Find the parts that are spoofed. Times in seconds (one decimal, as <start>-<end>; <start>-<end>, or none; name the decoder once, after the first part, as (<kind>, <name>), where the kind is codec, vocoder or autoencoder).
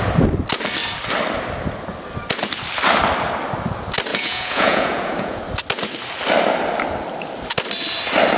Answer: 4.1-5.4 (vocoder, Vocos)